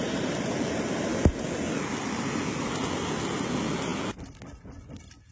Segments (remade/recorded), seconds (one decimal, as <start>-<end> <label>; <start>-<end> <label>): 0.0-1.1 remade; 1.1-3.2 recorded; 3.2-3.9 remade; 3.9-5.3 recorded